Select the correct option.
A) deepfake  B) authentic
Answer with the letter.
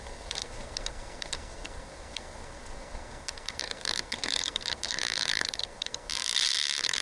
A